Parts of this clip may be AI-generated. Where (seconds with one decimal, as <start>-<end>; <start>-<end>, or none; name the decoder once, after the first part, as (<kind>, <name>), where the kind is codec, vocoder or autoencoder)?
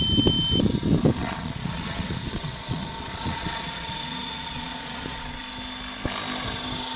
1.2-5.4 (vocoder, Vocos)